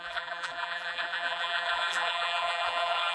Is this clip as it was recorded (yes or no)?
no